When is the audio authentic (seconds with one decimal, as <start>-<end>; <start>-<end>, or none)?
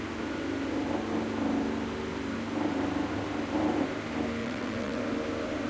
0.0-4.4; 5.0-5.7